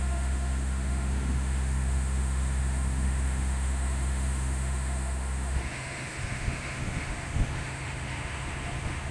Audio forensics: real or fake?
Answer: fake